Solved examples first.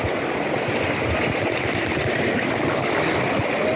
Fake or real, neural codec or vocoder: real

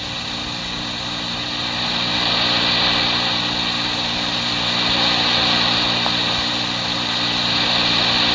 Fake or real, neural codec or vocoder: real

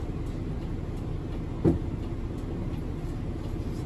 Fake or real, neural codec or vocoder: real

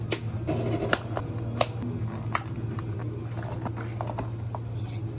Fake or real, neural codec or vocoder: real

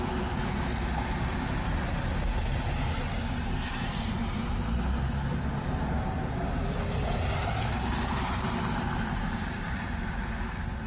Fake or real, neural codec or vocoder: real